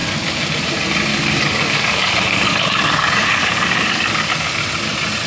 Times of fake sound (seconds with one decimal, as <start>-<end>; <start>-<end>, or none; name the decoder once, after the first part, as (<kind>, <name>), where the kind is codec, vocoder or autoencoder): 1.1-4.3 (codec, DAC)